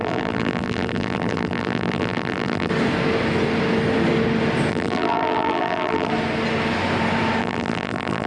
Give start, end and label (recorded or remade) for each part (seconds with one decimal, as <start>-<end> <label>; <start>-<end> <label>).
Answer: 0.0-2.7 remade; 2.7-4.7 recorded; 4.7-6.1 remade; 6.1-7.4 recorded; 7.4-8.3 remade